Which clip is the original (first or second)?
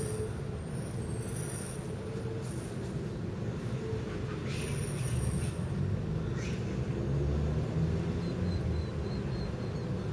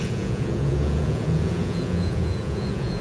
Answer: first